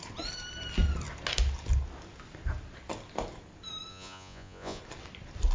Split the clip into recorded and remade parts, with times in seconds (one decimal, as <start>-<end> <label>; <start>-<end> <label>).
0.0-3.9 recorded; 3.9-4.8 remade; 4.8-5.5 recorded